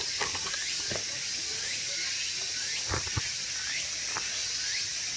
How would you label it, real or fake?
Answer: real